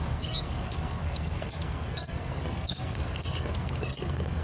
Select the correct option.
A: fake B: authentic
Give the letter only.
A